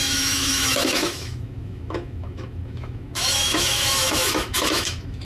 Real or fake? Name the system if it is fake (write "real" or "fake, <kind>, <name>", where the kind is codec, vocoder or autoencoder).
fake, autoencoder, DAC-VAE